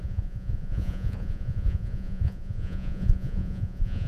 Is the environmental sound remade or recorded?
remade